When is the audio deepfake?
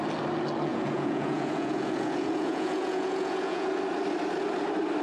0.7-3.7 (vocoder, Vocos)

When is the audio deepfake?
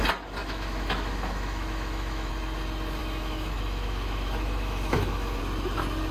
0.4-2.3 (autoencoder, DAC-VAE); 3.0-5.4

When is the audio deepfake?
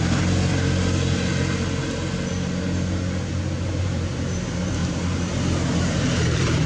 0.0-0.5 (vocoder, BigVGAN v2); 3.7-4.8; 5.8-6.7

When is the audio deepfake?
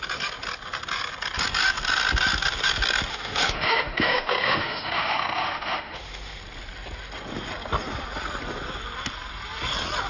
3.1-6.4 (autoencoder, DAC-VAE)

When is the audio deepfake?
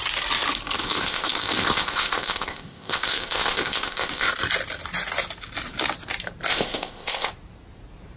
0.8-4.3 (codec, ZipCodec); 6.5-7.3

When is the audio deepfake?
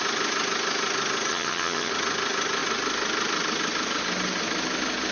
1.3-1.9 (vocoder, HiFi-GAN)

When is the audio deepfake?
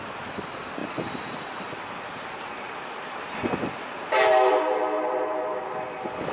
0.8-4.5 (vocoder, BigVGAN v2)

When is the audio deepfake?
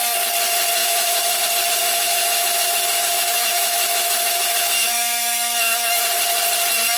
0.8-1.4 (autoencoder, DAC-VAE); 1.8-6.0